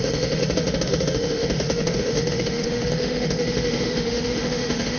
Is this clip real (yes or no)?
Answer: no